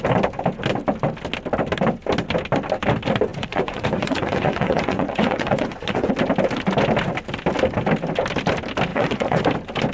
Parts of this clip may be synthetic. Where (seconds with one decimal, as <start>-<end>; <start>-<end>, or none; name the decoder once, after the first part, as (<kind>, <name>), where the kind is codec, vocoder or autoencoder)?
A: 3.3-6.1 (vocoder, Vocos); 8.9-9.4